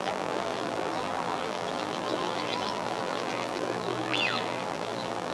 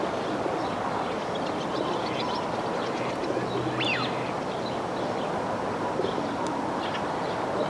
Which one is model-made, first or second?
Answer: first